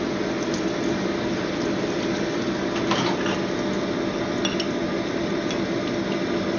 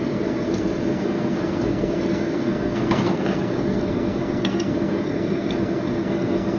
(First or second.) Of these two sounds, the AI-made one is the second